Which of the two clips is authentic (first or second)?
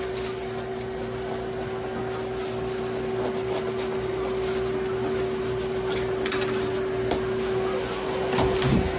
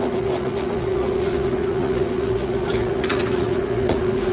first